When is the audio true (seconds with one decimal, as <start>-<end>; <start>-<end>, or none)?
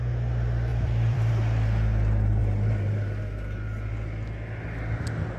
0.0-0.7; 1.3-5.4